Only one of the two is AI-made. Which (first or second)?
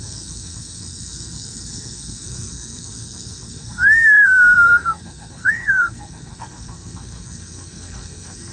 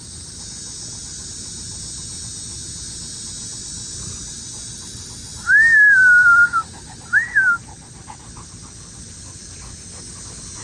first